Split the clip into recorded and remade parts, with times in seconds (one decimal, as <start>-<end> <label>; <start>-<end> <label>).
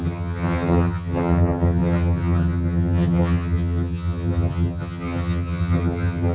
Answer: 0.0-6.3 remade